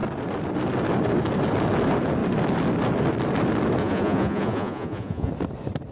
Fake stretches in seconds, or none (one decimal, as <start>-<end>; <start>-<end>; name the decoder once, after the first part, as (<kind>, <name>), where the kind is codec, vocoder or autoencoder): 3.8-5.3 (vocoder, Vocos)

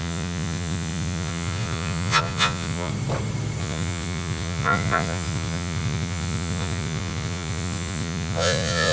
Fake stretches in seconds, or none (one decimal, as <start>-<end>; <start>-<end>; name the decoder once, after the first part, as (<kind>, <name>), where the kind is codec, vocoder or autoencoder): 0.0-2.9 (vocoder, Vocos); 3.6-8.9

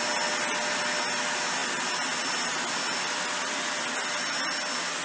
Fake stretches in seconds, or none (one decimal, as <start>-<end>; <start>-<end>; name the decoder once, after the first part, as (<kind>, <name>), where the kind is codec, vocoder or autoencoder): none

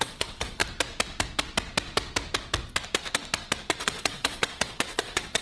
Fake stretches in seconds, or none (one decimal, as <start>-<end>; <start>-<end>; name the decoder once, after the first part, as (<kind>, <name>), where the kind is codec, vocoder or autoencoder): 0.0-0.6 (vocoder, WaveNeXt); 3.8-5.4

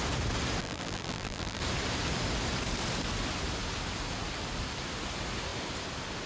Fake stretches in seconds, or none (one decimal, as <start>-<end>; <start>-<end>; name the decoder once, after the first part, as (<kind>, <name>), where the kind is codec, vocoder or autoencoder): 0.6-1.6 (vocoder, BigVGAN v2)

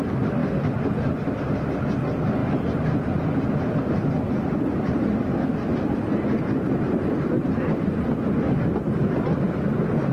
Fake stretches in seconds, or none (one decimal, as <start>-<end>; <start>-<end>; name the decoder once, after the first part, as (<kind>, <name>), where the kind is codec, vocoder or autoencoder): none

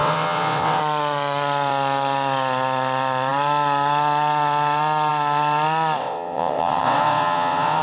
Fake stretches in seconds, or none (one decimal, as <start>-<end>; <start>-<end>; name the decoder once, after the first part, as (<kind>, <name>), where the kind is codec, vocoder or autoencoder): 0.0-0.8 (vocoder, WaveNeXt); 6.0-7.8

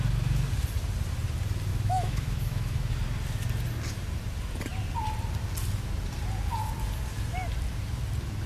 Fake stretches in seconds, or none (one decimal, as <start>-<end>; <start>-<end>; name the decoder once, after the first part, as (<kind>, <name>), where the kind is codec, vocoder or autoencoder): 1.7-2.9 (autoencoder, DAC-VAE)